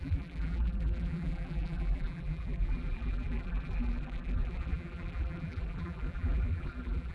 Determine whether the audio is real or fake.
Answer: fake